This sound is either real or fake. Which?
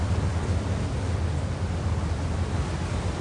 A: real